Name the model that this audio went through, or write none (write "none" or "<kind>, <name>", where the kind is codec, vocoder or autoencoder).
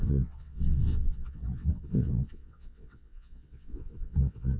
vocoder, WaveNeXt